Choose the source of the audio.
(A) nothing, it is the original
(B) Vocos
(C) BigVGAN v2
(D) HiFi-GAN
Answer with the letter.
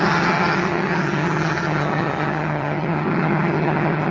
D